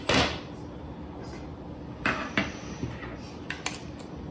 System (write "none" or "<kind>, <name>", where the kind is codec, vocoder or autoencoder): none